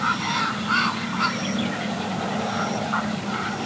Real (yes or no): yes